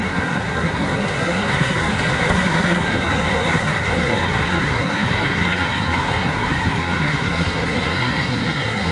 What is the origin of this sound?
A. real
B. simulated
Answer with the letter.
B